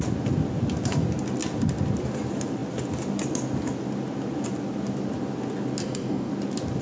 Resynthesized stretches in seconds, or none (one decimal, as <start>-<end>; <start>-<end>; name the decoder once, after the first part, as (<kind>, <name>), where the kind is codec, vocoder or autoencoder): 5.8-6.3 (codec, DAC)